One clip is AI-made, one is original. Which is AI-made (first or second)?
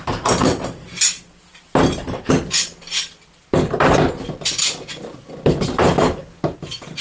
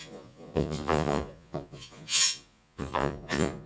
second